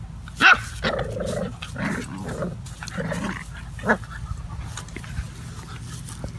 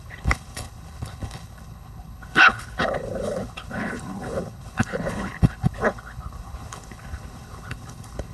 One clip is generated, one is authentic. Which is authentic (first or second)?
first